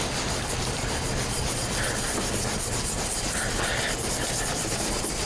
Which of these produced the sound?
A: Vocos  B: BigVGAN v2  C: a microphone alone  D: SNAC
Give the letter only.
B